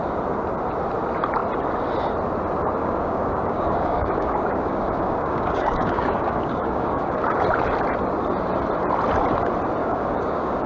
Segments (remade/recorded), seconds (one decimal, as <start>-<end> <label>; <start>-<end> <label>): 0.0-2.8 recorded; 2.8-7.2 remade; 7.2-9.8 recorded; 9.8-10.7 remade